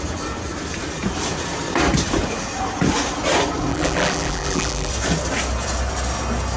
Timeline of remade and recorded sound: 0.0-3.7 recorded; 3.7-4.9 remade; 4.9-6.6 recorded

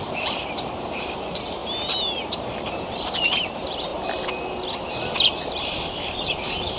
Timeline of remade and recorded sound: 0.0-3.9 remade; 3.9-5.6 recorded; 5.6-6.8 remade

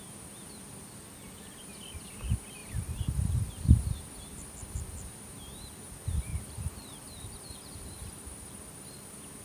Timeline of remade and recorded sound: 0.0-2.6 recorded; 2.6-3.5 remade; 3.5-6.3 recorded; 6.3-9.0 remade; 9.0-9.4 recorded

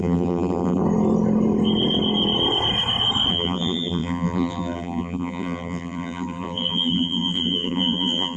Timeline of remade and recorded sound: 0.0-0.8 remade; 0.8-3.3 recorded; 3.3-8.4 remade

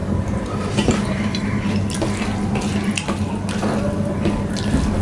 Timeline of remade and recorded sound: 0.0-1.7 remade; 1.7-5.0 recorded

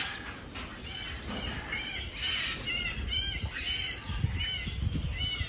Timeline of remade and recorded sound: 0.0-5.5 recorded

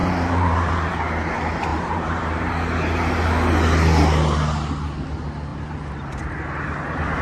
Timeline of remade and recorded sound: 0.0-0.9 remade; 0.9-1.7 recorded; 1.7-2.5 remade; 2.5-5.5 recorded; 5.5-6.2 remade; 6.2-7.2 recorded

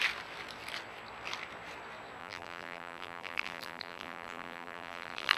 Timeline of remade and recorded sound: 0.0-2.2 recorded; 2.2-5.4 remade